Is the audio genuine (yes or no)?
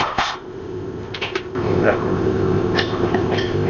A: no